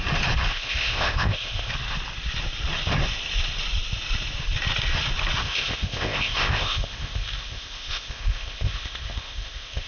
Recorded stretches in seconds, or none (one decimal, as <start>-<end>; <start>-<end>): 0.0-0.5; 1.7-5.4